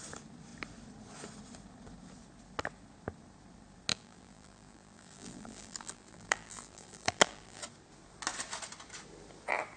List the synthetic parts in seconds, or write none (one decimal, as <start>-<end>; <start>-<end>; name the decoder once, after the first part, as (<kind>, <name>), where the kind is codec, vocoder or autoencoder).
3.9-7.6 (vocoder, BigVGAN v2)